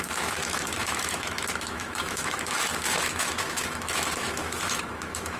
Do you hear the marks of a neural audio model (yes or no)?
yes